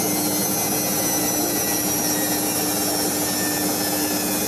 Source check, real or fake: real